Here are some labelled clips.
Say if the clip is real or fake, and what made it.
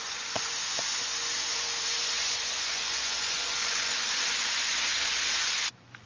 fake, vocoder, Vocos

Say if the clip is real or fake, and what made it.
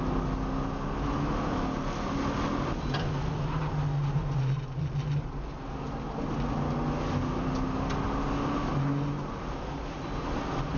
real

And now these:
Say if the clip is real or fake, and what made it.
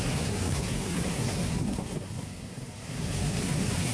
fake, codec, SNAC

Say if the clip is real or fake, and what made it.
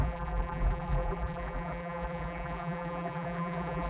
fake, vocoder, BigVGAN v2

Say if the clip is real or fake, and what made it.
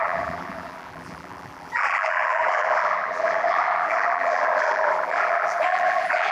fake, vocoder, BigVGAN v2